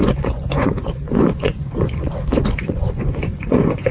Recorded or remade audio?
remade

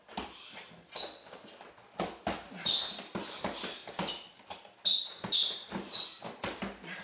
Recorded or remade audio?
recorded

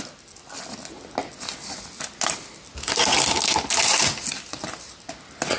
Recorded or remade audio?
recorded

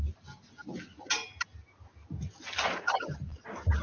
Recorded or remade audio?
recorded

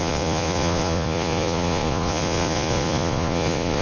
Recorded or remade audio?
remade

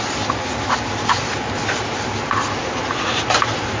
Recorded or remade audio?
recorded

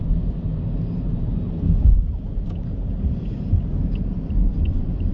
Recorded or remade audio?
recorded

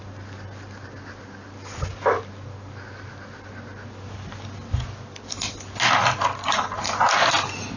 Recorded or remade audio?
recorded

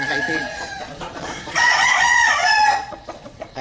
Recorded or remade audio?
remade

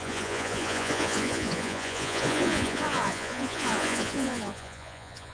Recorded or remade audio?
remade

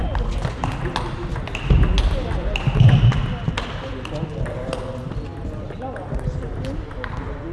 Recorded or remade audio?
recorded